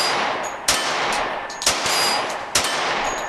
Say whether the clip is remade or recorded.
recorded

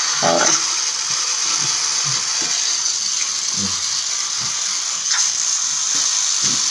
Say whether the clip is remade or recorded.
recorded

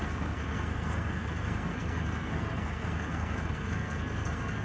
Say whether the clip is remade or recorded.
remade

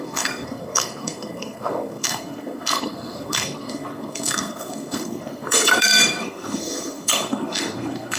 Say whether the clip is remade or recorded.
remade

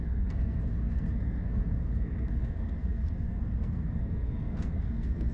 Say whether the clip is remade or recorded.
remade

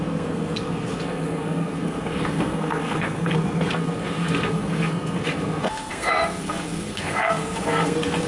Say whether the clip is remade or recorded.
remade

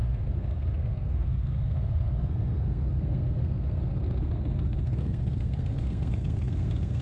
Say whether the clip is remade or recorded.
remade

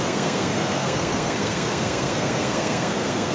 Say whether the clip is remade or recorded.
remade